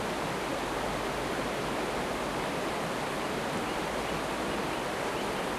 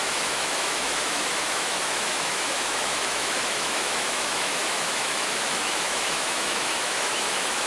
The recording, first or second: first